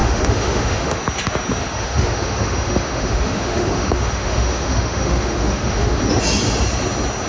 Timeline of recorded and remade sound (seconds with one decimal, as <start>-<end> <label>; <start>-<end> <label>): 0.0-1.0 remade; 1.0-1.6 recorded; 1.6-6.0 remade; 6.0-7.3 recorded

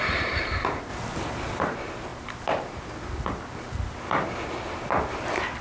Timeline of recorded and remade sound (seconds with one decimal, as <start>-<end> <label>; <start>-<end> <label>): 0.0-0.9 remade; 0.9-1.6 recorded; 1.6-2.1 remade; 2.1-5.6 recorded

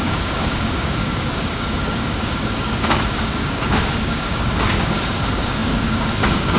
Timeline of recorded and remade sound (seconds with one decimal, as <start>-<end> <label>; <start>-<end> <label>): 0.0-6.6 remade

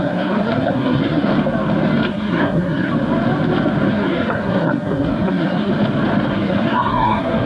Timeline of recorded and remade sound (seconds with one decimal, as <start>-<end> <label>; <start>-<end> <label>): 0.0-1.3 remade; 1.3-2.1 recorded; 2.1-2.9 remade; 2.9-3.9 recorded; 3.9-5.7 remade; 5.7-6.3 recorded; 6.3-7.5 remade

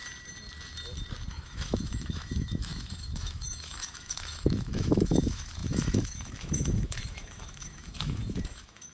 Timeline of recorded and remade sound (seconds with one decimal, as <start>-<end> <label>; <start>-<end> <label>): 0.0-1.3 recorded; 1.3-8.9 remade

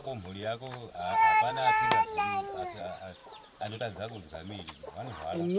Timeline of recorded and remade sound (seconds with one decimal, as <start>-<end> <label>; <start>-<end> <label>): 0.0-2.8 remade; 2.8-3.2 recorded; 3.2-3.8 remade; 3.8-5.6 recorded

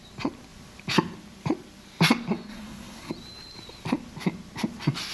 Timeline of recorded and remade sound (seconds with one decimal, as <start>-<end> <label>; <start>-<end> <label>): 0.0-2.5 recorded; 2.5-3.1 remade; 3.1-5.1 recorded

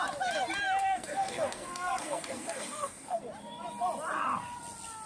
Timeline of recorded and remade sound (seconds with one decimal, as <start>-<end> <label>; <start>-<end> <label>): 0.0-0.8 recorded; 0.8-3.2 remade; 3.2-5.1 recorded